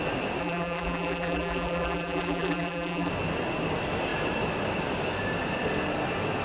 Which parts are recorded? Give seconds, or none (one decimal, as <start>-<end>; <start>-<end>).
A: 0.0-0.4; 3.1-6.4